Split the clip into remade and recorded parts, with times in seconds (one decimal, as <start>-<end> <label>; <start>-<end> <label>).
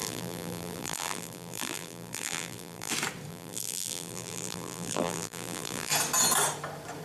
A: 0.0-2.9 remade; 2.9-3.3 recorded; 3.3-5.9 remade; 5.9-7.0 recorded